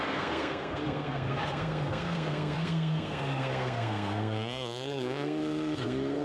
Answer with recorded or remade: remade